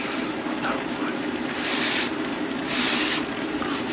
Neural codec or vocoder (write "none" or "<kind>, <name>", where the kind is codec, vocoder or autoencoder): vocoder, BigVGAN v2